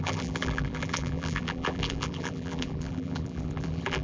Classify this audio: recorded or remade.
remade